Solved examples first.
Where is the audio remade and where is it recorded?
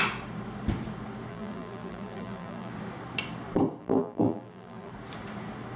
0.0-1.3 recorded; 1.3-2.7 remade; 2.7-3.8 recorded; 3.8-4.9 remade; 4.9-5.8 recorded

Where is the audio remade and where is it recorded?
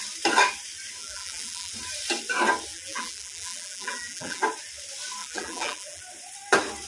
0.0-1.0 recorded; 1.0-1.7 remade; 1.7-2.7 recorded; 2.7-4.4 remade; 4.4-5.2 recorded; 5.2-6.0 remade; 6.0-6.9 recorded